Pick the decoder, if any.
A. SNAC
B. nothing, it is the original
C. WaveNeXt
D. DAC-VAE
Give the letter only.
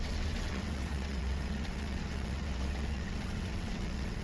C